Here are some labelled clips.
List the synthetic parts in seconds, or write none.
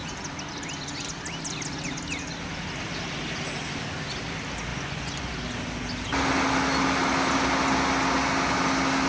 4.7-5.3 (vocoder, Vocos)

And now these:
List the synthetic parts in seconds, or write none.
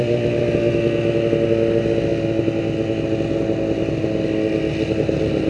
none